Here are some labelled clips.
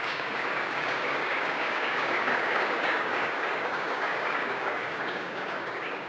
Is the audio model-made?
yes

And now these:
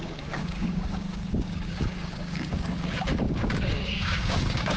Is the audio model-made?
yes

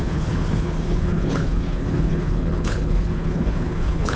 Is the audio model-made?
yes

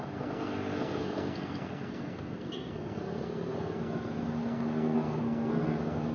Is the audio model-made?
yes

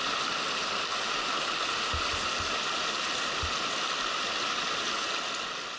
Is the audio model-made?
no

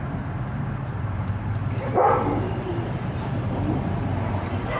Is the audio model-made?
yes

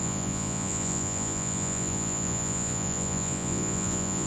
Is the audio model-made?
yes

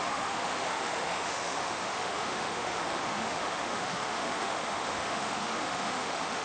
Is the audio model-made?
yes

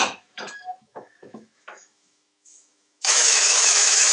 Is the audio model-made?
yes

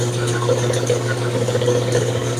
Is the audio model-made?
yes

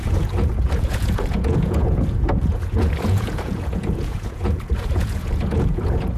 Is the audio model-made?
yes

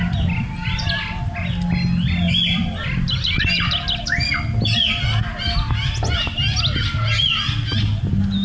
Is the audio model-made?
no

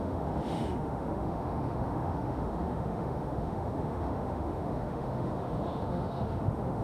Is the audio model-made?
yes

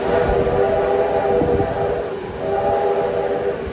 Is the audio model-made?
no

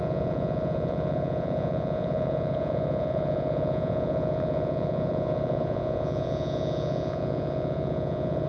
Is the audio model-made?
yes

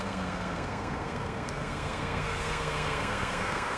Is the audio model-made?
yes